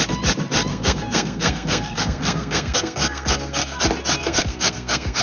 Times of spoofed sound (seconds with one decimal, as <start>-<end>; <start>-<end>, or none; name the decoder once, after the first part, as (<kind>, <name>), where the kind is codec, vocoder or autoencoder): 0.7-3.8 (codec, SNAC); 4.2-5.2